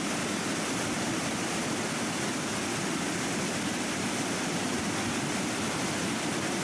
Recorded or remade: remade